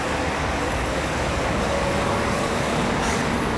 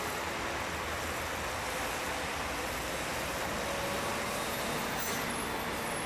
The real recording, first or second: second